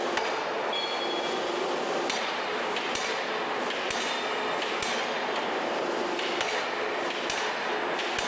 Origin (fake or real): real